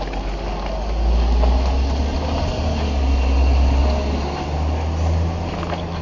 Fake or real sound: real